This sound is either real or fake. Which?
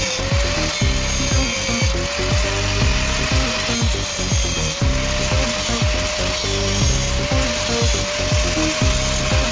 real